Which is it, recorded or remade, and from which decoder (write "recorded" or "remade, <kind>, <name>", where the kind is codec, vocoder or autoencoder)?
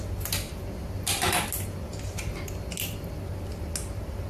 recorded